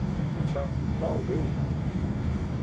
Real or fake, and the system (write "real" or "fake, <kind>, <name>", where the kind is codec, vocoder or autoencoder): fake, codec, DAC